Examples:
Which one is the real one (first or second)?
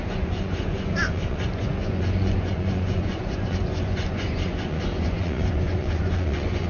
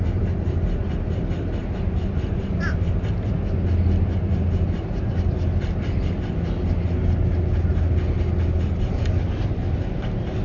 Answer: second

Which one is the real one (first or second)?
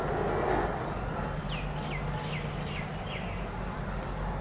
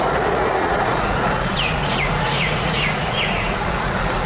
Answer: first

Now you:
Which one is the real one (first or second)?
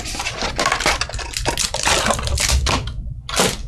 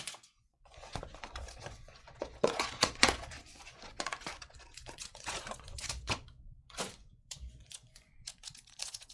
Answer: first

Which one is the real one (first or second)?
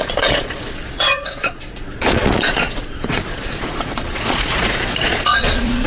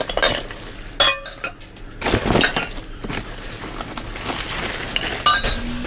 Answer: second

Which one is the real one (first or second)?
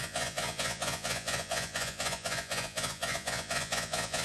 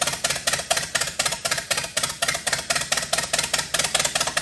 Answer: second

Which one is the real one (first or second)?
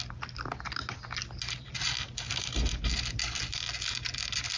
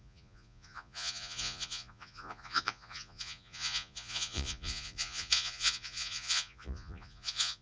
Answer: first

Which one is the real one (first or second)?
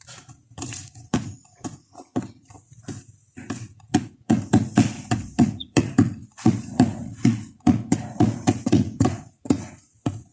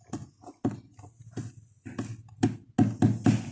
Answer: second